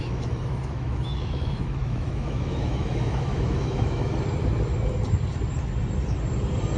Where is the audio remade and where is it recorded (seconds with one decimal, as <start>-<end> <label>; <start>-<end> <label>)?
0.0-4.1 remade; 4.1-6.8 recorded